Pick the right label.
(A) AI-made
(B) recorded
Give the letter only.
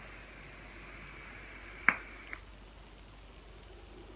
B